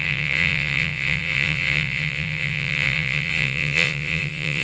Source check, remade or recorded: remade